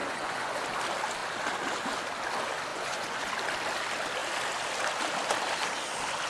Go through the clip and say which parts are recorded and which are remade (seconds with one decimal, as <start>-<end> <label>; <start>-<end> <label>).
0.0-0.6 remade; 0.6-2.7 recorded; 2.7-3.3 remade; 3.3-6.3 recorded